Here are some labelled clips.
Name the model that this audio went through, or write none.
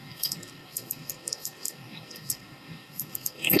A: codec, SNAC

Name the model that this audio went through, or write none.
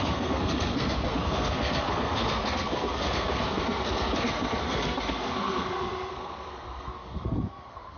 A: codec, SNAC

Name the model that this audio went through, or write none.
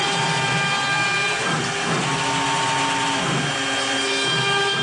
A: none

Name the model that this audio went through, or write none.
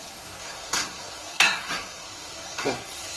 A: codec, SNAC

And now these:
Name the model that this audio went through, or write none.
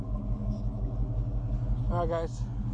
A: none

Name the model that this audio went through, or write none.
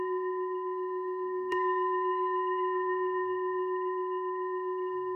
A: codec, SNAC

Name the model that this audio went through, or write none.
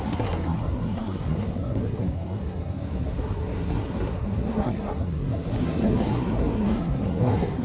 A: codec, SNAC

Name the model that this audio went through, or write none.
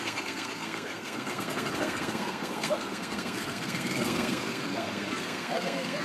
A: codec, SNAC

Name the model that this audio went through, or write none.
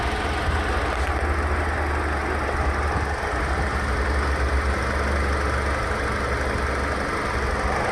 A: none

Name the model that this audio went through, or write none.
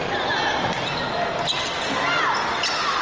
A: none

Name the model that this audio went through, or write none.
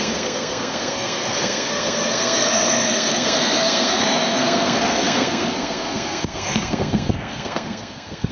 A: codec, SNAC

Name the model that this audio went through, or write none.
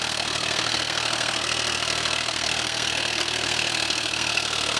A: codec, SNAC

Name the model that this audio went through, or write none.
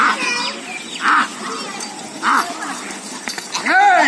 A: none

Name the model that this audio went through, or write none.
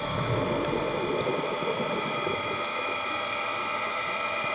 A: none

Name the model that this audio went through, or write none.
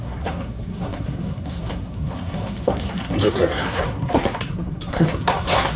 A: codec, SNAC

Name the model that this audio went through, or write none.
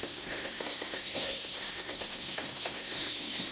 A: codec, SNAC